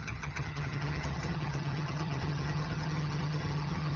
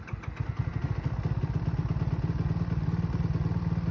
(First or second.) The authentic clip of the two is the second